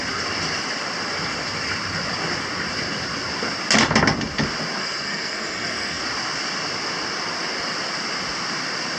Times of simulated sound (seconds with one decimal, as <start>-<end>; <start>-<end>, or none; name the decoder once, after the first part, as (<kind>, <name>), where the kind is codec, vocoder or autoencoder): 4.8-6.0 (codec, SNAC)